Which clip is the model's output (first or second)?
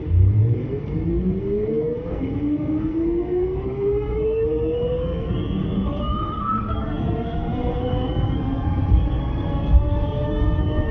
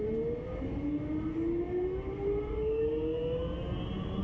first